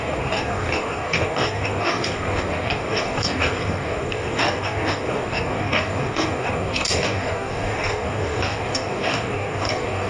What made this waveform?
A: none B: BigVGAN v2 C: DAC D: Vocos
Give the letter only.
C